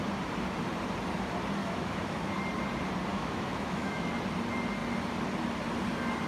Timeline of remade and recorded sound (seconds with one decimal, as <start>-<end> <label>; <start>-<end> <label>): 0.0-1.6 recorded; 1.6-2.3 remade; 2.3-3.1 recorded; 3.1-4.1 remade; 4.1-6.3 recorded